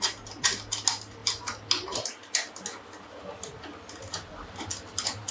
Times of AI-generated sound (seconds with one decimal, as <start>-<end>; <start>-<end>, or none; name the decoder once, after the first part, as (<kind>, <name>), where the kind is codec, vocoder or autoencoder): none